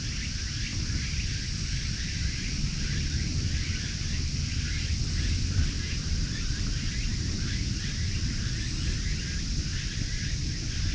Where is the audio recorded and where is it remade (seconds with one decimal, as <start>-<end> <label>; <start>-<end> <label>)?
0.0-10.9 recorded